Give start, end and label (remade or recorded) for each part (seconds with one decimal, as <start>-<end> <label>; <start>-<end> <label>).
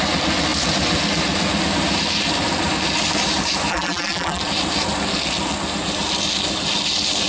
0.0-3.7 recorded; 3.7-4.4 remade; 4.4-7.3 recorded